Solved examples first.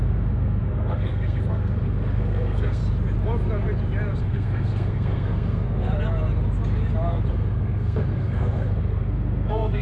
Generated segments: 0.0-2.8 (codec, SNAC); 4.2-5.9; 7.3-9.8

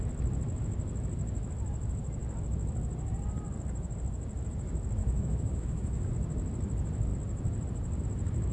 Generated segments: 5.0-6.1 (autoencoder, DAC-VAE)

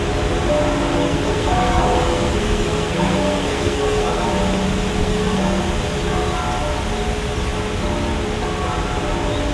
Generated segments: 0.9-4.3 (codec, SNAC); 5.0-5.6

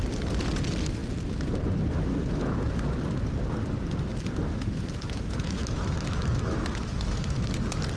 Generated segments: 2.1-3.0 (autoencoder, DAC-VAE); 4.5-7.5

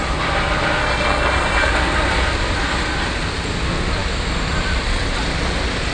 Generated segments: 0.8-1.7 (codec, SNAC)

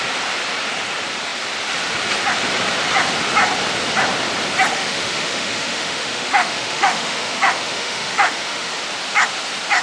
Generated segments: 4.7-8.7 (autoencoder, DAC-VAE)

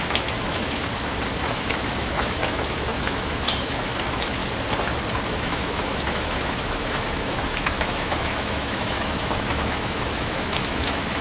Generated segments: 0.0-0.9 (autoencoder, DAC-VAE); 1.4-4.4; 5.3-11.2

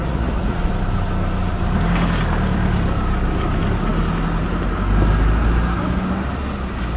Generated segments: 0.0-0.7 (vocoder, Vocos)